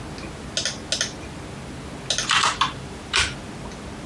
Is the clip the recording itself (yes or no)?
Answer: yes